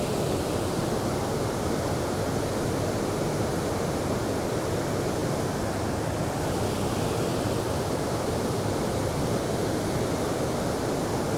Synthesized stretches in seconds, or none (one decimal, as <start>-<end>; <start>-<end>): none